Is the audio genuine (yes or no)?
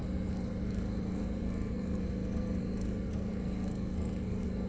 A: no